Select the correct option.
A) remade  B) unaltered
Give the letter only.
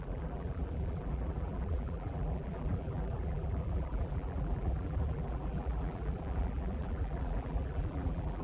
A